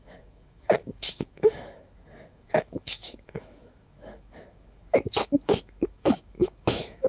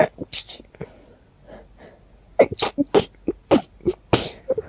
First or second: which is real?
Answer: second